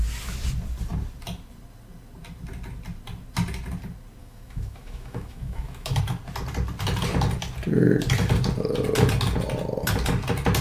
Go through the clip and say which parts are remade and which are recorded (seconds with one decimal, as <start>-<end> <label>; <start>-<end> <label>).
0.0-4.2 recorded; 4.2-6.0 remade; 6.0-10.6 recorded